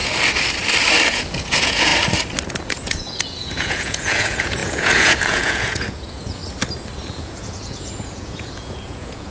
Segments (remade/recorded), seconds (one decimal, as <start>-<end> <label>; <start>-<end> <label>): 0.0-1.1 recorded; 1.1-1.9 remade; 1.9-2.5 recorded; 2.5-6.4 remade; 6.4-7.1 recorded; 7.1-9.3 remade